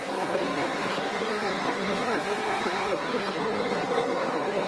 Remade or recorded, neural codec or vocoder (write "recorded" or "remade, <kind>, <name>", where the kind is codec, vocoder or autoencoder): remade, codec, SNAC